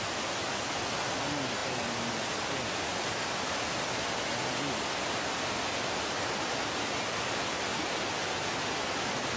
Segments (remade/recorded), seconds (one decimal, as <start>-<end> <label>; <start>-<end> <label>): 0.0-9.4 recorded